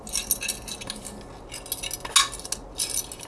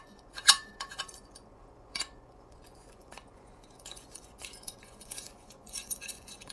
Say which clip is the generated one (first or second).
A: second